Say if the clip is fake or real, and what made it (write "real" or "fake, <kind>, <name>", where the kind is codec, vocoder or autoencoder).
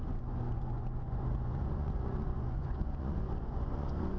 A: fake, vocoder, Vocos